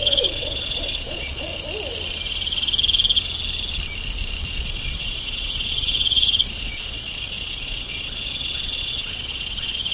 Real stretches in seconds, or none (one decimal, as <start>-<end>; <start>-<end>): 1.5-4.4

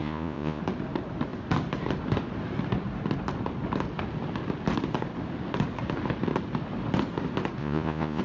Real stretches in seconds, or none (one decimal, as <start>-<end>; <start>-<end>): 0.6-7.6

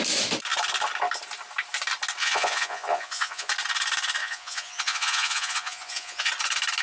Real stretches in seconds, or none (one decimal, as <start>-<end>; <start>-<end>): 0.0-2.2; 3.5-4.2; 6.3-6.8

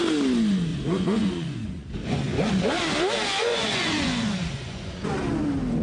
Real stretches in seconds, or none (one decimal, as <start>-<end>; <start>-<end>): 0.0-0.7; 2.5-3.4; 5.1-5.8

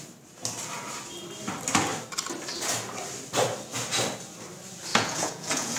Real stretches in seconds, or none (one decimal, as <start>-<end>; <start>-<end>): 0.0-4.9